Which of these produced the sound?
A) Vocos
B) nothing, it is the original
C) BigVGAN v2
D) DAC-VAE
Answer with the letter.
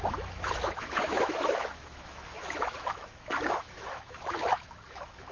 D